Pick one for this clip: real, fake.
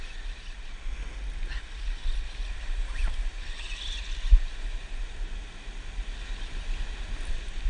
real